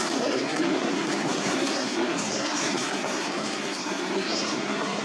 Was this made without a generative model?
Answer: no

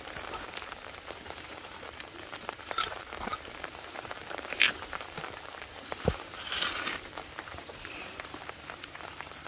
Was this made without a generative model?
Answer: no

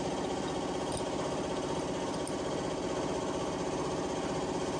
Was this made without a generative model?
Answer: yes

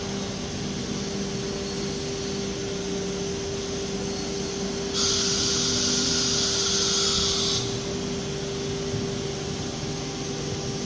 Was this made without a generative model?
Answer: yes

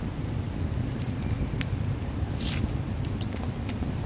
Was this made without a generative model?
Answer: yes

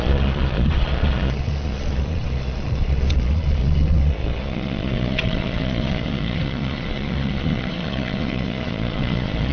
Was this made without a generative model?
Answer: no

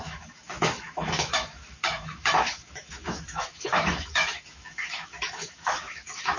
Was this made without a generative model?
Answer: no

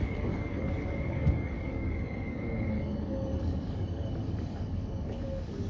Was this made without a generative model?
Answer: no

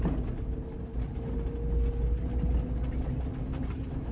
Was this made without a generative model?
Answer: yes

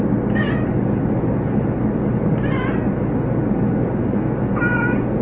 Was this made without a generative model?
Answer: yes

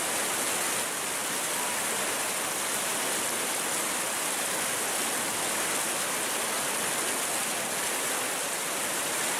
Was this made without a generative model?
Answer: yes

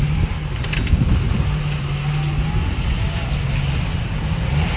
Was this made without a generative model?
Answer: yes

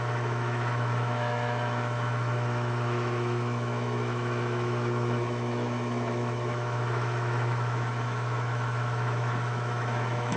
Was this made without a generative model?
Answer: no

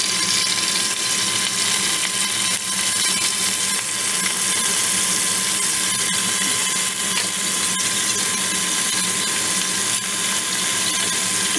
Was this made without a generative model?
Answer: yes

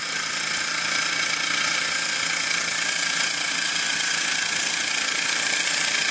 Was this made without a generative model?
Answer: yes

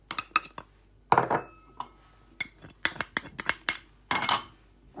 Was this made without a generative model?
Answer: yes